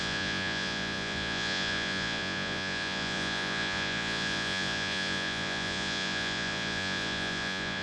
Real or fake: fake